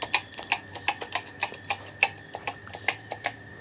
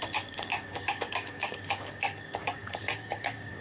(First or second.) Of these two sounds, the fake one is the second